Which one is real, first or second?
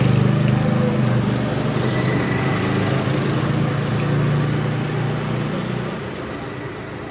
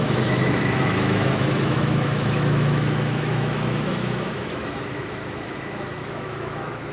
first